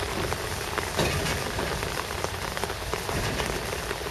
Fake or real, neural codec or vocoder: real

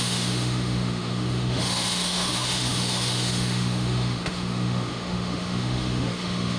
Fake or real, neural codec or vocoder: fake, autoencoder, DAC-VAE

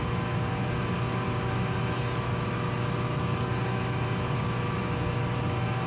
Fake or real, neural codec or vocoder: real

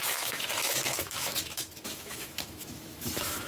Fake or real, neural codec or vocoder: fake, autoencoder, DAC-VAE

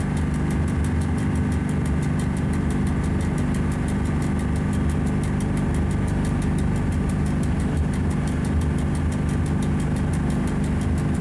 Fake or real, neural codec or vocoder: real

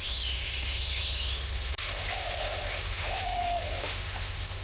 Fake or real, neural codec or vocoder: fake, autoencoder, DAC-VAE